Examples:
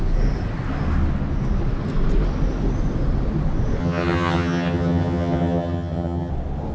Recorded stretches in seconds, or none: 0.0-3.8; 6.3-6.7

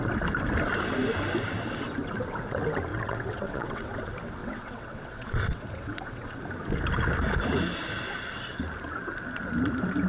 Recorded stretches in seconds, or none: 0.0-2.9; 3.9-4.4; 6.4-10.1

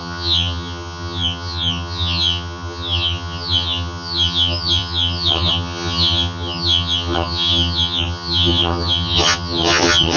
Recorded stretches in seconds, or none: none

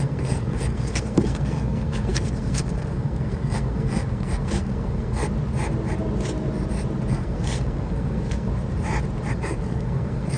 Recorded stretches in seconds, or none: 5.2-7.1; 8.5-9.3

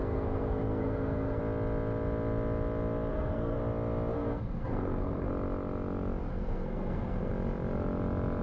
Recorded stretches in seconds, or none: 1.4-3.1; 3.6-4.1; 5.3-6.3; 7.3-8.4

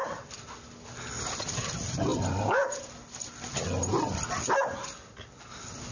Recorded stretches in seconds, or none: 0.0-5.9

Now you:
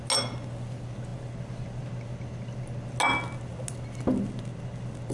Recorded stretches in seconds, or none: 0.0-5.1